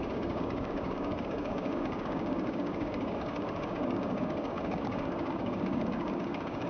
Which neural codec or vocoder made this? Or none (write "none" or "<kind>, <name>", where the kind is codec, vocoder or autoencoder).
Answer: codec, DAC